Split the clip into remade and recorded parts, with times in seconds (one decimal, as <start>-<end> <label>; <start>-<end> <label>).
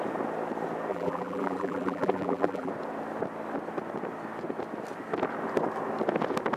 0.0-0.9 recorded; 0.9-2.7 remade; 2.7-6.6 recorded